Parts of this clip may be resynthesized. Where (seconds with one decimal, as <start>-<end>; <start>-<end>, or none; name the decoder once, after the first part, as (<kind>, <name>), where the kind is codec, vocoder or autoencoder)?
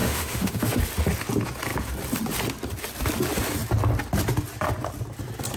0.0-0.8 (autoencoder, DAC-VAE)